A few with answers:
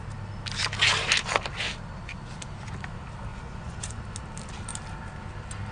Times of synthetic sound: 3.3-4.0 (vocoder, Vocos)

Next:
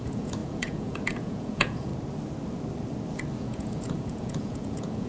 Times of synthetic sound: 0.0-1.9 (vocoder, Vocos); 3.4-5.1

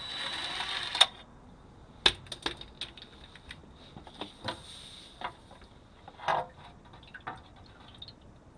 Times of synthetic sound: none